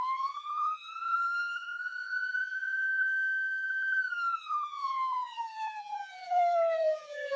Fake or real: fake